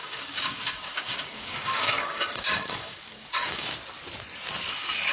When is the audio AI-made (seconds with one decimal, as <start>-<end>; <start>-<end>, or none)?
0.0-3.8